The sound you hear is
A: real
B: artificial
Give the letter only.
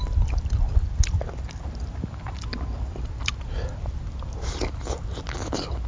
A